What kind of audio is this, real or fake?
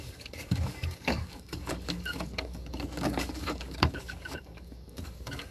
fake